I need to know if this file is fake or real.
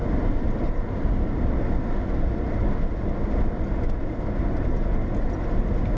real